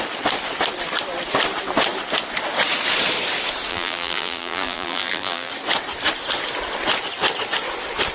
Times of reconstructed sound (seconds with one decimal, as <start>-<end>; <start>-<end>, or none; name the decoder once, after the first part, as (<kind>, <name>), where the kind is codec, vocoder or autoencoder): 3.7-5.5 (vocoder, BigVGAN v2)